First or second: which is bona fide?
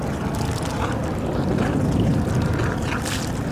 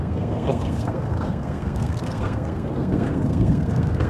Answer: first